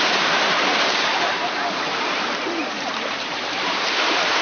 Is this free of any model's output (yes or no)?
no